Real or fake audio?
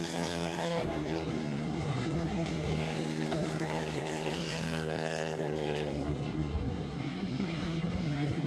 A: fake